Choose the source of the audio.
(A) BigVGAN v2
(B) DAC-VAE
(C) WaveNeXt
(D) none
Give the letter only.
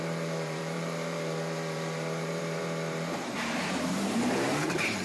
A